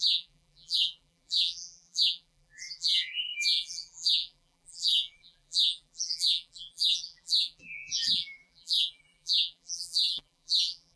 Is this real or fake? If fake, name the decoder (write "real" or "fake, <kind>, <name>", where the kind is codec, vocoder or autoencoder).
fake, vocoder, BigVGAN v2